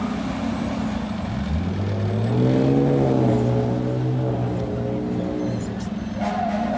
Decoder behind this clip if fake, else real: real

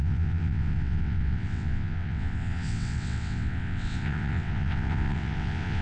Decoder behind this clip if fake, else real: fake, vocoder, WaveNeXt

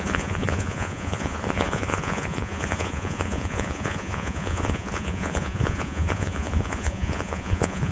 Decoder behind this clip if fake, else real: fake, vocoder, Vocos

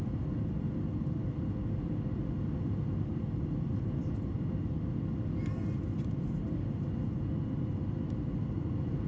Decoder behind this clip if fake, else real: real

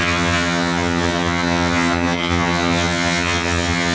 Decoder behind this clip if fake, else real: fake, vocoder, HiFi-GAN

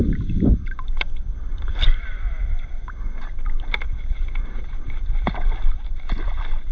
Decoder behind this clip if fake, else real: fake, vocoder, BigVGAN v2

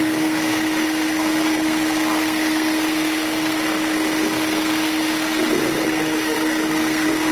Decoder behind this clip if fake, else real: fake, codec, SNAC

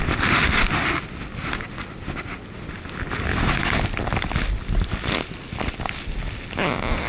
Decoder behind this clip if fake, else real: real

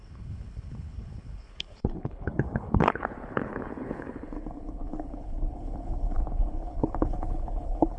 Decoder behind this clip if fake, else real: fake, codec, HILCodec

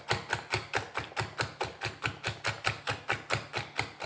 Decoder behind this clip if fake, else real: real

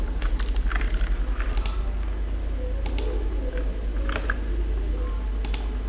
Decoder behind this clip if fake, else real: real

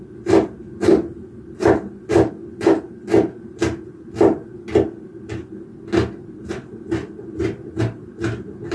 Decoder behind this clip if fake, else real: real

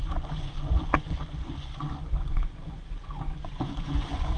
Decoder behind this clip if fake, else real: fake, vocoder, Vocos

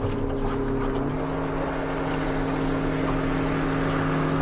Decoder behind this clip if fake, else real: real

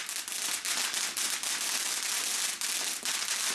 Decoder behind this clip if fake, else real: real